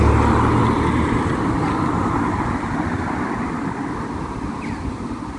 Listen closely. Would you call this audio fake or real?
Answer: real